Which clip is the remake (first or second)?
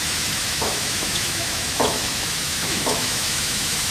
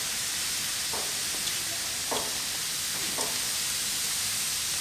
first